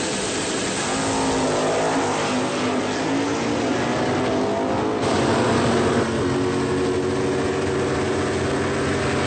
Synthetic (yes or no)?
no